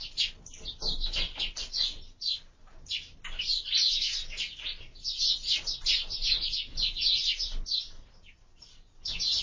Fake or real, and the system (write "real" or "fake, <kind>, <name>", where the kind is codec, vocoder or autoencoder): real